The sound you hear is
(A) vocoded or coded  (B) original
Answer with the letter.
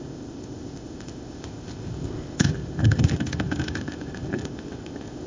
A